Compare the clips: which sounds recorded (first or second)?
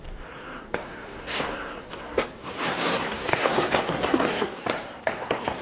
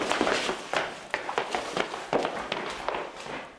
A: second